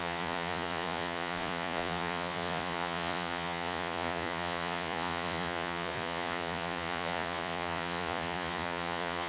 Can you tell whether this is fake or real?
fake